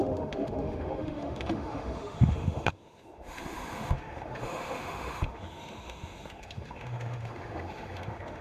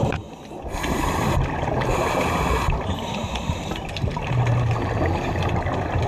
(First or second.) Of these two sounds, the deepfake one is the first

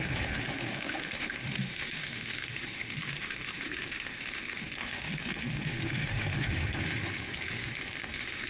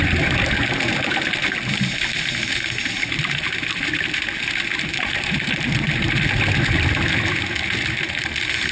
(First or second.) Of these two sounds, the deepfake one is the first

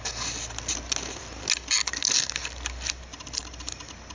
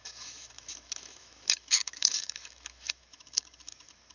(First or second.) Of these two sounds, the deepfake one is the second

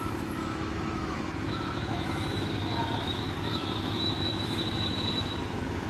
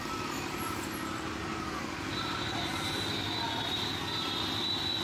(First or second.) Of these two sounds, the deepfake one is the first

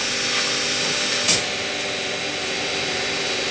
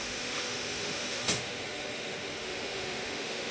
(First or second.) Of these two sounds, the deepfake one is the second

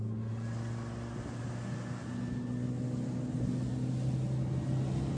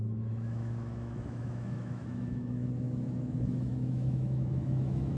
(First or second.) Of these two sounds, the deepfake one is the second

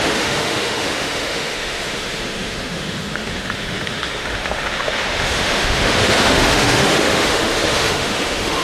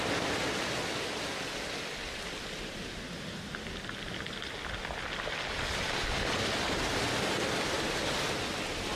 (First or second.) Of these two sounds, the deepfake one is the first